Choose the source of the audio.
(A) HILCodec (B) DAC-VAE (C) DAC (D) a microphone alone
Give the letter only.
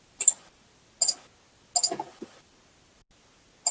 D